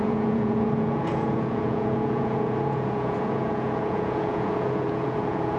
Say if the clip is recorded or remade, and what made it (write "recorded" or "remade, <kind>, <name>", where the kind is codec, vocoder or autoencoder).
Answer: remade, vocoder, Vocos